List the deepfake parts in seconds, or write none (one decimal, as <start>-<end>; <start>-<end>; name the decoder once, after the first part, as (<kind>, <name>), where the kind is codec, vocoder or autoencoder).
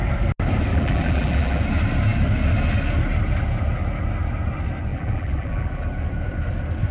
0.7-1.6 (vocoder, BigVGAN v2); 4.9-5.9